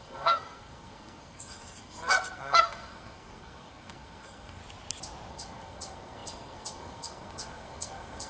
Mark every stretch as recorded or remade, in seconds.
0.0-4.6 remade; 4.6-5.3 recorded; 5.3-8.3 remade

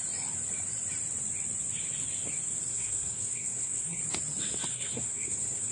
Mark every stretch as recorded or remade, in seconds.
0.0-2.7 recorded; 2.7-4.0 remade; 4.0-4.7 recorded; 4.7-5.7 remade

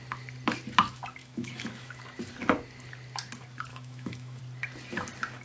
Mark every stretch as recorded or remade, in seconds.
0.0-1.2 recorded; 1.2-2.0 remade; 2.0-3.7 recorded; 3.7-4.4 remade; 4.4-5.4 recorded

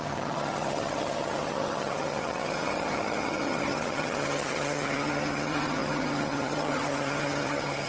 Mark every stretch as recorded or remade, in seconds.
0.0-7.9 remade

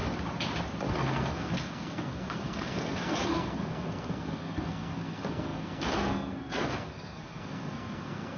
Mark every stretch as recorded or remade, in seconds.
0.0-0.9 recorded; 0.9-8.4 remade

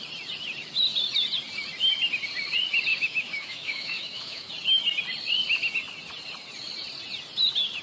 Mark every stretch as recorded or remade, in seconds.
0.0-2.9 recorded; 2.9-4.5 remade; 4.5-7.8 recorded

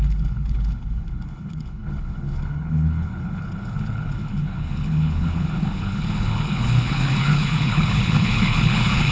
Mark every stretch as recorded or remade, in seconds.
0.0-9.1 remade

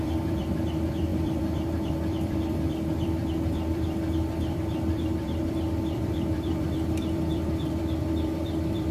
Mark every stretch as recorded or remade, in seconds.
0.0-8.9 remade